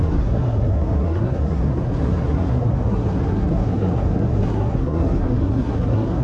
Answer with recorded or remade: remade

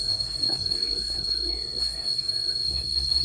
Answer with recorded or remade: remade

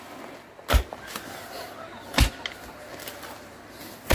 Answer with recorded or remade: recorded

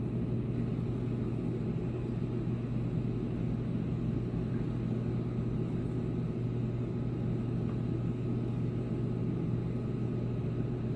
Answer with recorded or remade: recorded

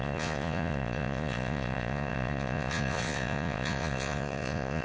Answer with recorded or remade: remade